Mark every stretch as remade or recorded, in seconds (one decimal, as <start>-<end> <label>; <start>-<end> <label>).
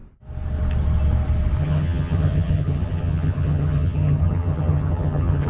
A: 0.0-1.6 recorded; 1.6-5.5 remade